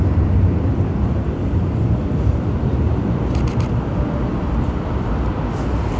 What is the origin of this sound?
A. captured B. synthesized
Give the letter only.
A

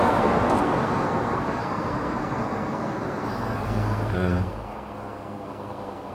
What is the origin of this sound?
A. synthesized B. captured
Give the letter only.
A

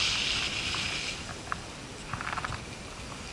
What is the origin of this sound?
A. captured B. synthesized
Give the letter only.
A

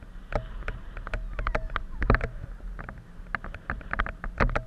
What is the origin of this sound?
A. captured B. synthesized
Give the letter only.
A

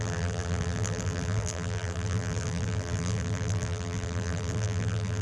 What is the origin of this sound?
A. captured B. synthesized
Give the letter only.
B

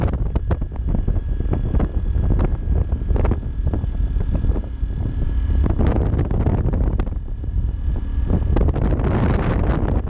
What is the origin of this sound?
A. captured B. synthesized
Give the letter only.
A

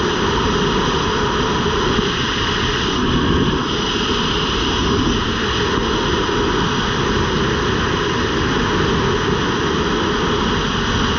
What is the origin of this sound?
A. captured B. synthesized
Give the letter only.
A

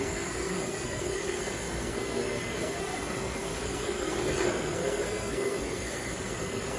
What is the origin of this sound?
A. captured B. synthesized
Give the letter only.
B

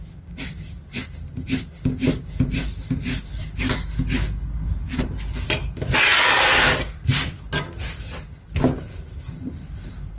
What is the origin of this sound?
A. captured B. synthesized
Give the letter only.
A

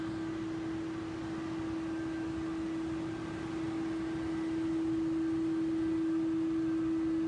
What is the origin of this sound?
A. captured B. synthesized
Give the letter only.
A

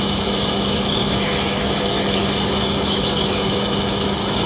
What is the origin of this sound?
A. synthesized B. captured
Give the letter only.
A